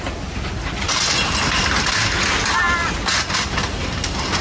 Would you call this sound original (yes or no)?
yes